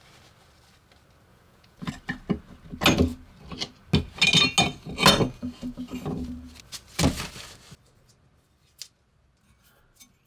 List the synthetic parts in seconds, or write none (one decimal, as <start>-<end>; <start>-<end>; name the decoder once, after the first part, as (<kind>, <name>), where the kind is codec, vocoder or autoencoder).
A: 1.3-1.9 (vocoder, Vocos)